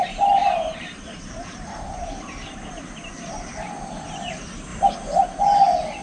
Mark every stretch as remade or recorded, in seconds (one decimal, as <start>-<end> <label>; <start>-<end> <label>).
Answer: 0.0-0.4 recorded; 0.4-2.7 remade; 2.7-3.1 recorded; 3.1-3.9 remade; 3.9-6.0 recorded